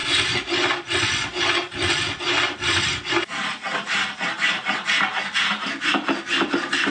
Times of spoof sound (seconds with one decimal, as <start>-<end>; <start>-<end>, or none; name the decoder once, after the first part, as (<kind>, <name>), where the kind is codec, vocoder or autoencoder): 3.7-5.1 (vocoder, BigVGAN v2)